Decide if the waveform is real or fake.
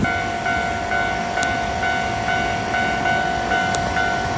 real